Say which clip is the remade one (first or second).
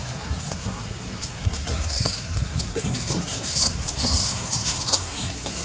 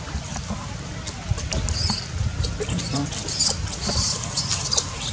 first